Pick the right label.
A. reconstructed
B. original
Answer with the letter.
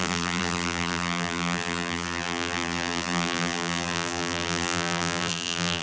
A